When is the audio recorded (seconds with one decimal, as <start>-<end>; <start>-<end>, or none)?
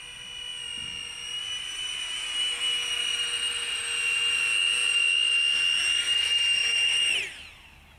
0.0-6.6; 7.1-8.0